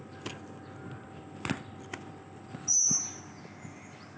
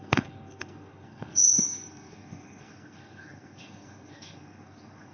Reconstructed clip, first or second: second